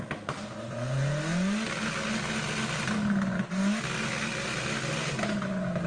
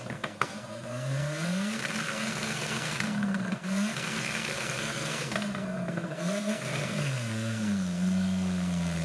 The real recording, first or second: first